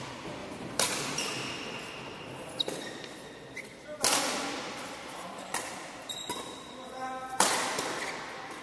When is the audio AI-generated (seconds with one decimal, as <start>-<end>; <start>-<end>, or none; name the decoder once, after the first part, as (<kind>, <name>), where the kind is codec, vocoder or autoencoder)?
0.4-1.2 (vocoder, BigVGAN v2)